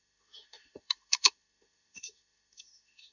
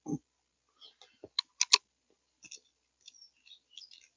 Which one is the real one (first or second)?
second